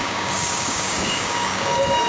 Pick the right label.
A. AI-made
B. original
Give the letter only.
A